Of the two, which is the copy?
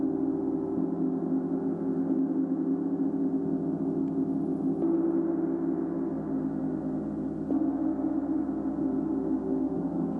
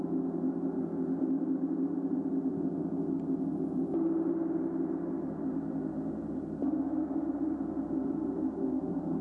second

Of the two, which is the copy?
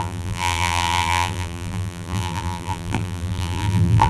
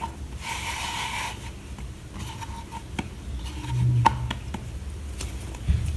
first